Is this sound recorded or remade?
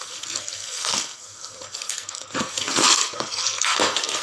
remade